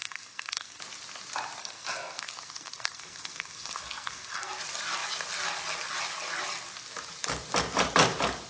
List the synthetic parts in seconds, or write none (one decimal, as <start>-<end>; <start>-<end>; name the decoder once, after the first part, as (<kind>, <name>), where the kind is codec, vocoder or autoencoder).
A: 0.0-0.8 (codec, SNAC); 1.6-4.6